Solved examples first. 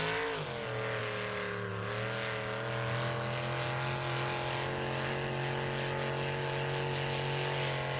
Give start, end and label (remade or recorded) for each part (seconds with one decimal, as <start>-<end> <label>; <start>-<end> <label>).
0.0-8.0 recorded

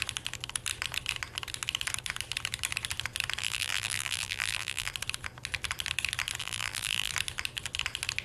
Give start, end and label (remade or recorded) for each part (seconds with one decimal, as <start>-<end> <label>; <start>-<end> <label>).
0.0-3.4 recorded; 3.4-4.9 remade; 4.9-6.4 recorded; 6.4-7.1 remade; 7.1-8.2 recorded

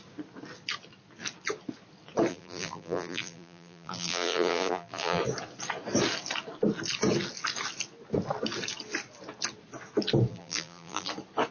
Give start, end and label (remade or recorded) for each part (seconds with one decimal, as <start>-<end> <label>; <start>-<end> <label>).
0.0-2.3 recorded; 2.3-5.2 remade; 5.2-10.3 recorded; 10.3-11.1 remade; 11.1-11.5 recorded

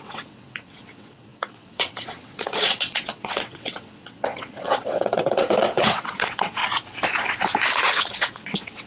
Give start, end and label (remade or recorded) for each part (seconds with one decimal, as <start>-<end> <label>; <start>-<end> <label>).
0.0-6.6 remade; 6.6-7.9 recorded; 7.9-8.9 remade